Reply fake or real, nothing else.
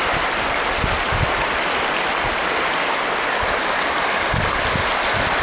real